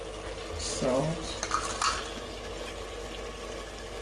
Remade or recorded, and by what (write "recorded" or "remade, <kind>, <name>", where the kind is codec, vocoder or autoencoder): recorded